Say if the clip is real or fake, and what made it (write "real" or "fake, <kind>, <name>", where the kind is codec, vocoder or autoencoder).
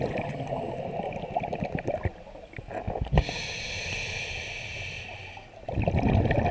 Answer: real